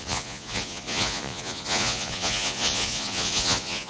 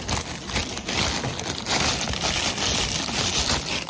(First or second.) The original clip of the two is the second